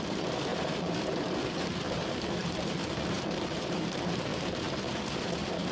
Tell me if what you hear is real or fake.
fake